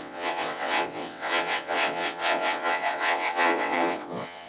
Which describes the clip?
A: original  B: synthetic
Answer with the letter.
B